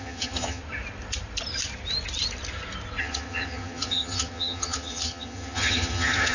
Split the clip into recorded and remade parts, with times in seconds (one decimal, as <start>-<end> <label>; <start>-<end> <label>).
0.0-0.6 remade; 0.6-3.0 recorded; 3.0-6.3 remade